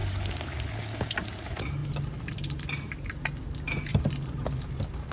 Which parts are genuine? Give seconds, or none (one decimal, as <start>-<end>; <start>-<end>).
0.0-1.8; 2.9-3.9